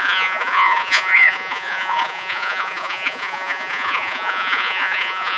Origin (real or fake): fake